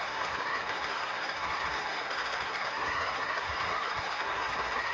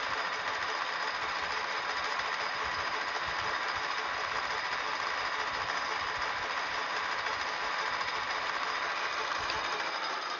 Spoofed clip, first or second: first